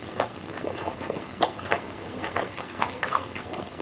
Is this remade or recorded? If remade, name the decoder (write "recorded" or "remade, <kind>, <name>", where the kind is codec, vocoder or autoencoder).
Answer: remade, codec, SNAC